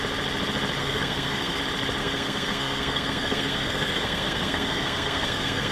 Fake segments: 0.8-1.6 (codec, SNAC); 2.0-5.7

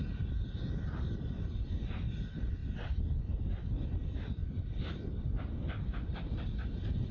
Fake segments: none

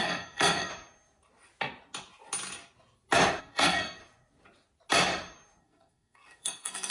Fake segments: 0.0-0.7 (codec, SNAC); 3.4-4.0; 5.6-6.9

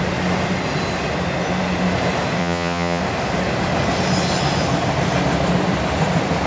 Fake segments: 2.4-3.0 (vocoder, HiFi-GAN)

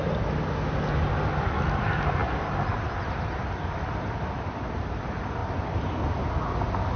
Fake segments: none

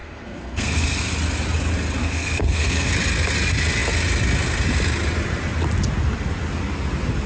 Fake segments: 0.0-1.1 (codec, SNAC); 2.0-2.9

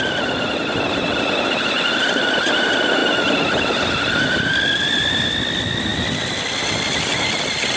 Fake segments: none